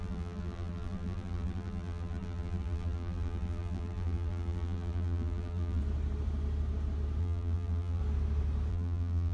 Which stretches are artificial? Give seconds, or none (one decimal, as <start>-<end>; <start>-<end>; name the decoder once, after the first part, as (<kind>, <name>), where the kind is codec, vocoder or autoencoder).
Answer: 0.0-5.8 (vocoder, BigVGAN v2); 7.2-8.0; 8.7-9.3